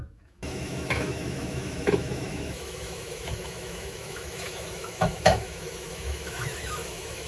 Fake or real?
fake